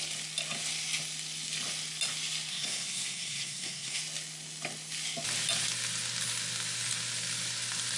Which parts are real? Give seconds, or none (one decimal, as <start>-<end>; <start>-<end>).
0.0-2.5; 4.0-8.0